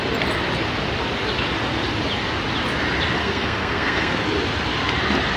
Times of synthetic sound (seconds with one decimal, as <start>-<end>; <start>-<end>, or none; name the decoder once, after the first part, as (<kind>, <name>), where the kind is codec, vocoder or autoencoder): 3.2-4.1 (codec, SNAC)